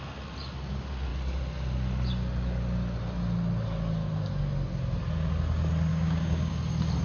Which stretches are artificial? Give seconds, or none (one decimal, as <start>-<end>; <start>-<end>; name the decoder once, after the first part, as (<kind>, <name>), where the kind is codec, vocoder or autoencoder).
5.9-6.5 (codec, DAC)